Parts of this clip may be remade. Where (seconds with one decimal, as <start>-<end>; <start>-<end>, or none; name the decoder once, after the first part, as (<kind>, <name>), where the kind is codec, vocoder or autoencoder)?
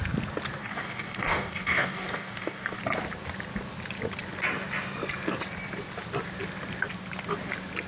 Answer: 0.6-2.8 (codec, DAC)